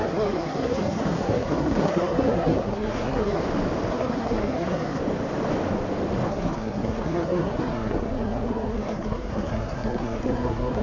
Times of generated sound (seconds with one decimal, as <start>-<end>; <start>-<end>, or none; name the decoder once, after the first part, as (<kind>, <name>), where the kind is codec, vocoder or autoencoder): 0.0-3.4 (codec, SNAC); 3.9-5.0; 6.3-10.8